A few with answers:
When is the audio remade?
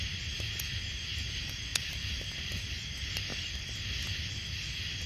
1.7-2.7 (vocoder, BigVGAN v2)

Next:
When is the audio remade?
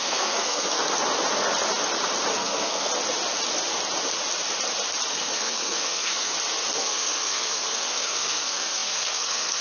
0.0-0.8 (codec, SNAC); 2.3-2.9; 5.1-6.3; 6.8-9.6